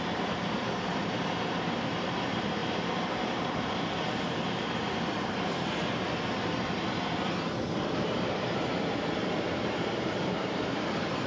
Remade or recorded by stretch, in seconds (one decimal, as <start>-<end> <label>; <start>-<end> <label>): 0.0-11.3 remade